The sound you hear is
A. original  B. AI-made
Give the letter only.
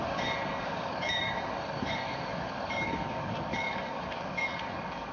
B